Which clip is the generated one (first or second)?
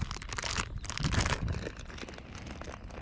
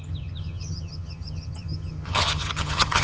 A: second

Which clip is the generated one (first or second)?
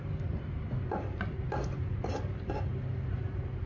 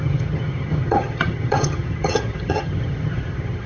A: second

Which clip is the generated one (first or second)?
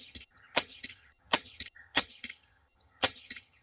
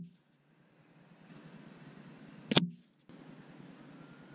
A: first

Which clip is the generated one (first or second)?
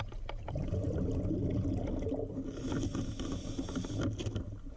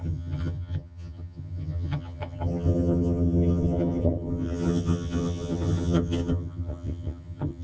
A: second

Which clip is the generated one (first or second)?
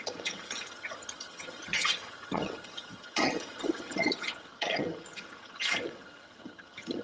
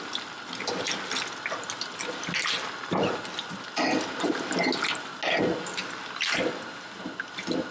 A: first